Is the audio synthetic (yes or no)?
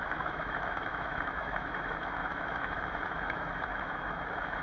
yes